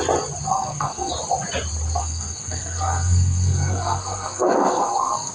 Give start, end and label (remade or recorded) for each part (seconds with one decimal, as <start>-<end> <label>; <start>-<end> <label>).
0.0-0.5 recorded; 0.5-1.1 remade; 1.1-2.0 recorded; 2.0-5.3 remade